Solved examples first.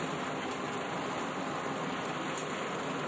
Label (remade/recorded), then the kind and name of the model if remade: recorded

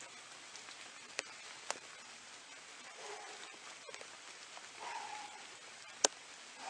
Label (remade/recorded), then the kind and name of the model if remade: recorded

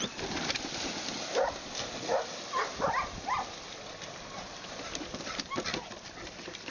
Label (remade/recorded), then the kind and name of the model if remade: remade, vocoder, BigVGAN v2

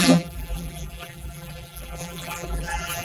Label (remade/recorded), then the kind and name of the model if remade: remade, vocoder, BigVGAN v2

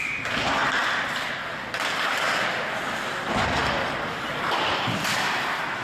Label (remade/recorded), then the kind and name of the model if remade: remade, vocoder, BigVGAN v2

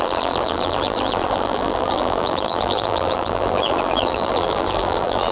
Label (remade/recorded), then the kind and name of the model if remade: remade, vocoder, BigVGAN v2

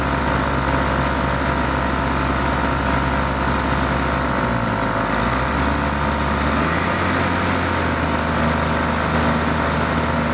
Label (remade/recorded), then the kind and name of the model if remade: recorded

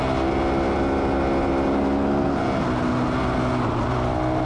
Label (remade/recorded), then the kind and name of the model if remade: recorded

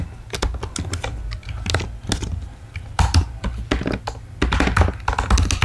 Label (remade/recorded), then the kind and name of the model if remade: recorded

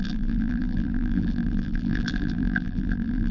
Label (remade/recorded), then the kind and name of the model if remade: remade, vocoder, BigVGAN v2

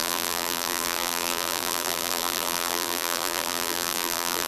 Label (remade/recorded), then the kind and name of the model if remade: remade, vocoder, BigVGAN v2